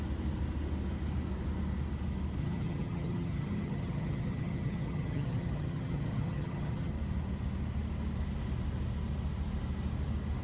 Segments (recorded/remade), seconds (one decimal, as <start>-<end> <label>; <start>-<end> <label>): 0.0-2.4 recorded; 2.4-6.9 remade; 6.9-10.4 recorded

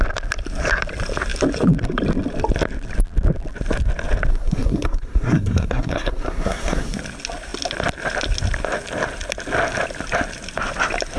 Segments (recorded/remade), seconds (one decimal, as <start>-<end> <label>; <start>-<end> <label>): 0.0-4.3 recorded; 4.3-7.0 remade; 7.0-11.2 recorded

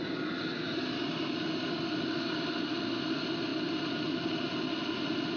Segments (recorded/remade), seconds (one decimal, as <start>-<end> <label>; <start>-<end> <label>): 0.0-5.4 recorded